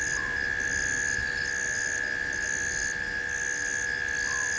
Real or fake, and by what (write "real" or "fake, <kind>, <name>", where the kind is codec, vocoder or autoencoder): real